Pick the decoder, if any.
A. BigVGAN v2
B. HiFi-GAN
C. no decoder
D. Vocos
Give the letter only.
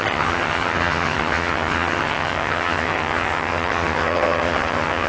B